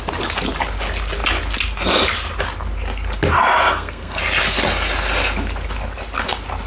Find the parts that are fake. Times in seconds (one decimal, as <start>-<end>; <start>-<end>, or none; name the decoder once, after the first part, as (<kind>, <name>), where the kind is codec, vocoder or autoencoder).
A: 3.6-4.2 (codec, SNAC)